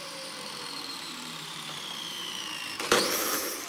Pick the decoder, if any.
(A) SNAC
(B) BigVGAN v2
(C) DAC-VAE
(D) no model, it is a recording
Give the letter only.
B